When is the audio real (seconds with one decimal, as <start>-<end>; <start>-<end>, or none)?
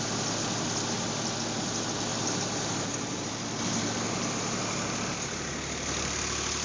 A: 0.0-2.1; 3.2-6.6